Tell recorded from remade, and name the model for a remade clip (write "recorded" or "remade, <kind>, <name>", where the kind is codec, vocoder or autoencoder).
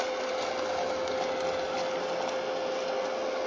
recorded